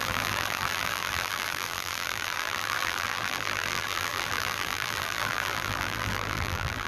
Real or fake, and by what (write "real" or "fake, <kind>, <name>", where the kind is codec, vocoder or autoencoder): fake, vocoder, BigVGAN v2